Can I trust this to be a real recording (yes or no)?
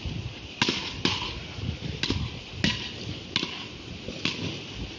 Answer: yes